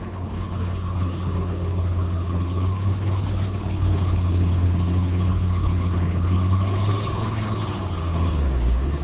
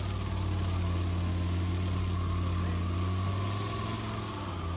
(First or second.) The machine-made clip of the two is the first